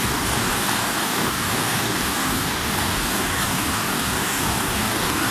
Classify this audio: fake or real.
fake